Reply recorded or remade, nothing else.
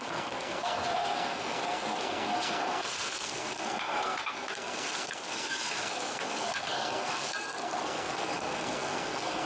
remade